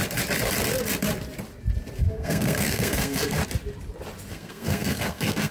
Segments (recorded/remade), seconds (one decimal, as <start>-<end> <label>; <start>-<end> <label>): 0.0-2.0 recorded; 2.0-3.4 remade; 3.4-4.3 recorded; 4.3-5.5 remade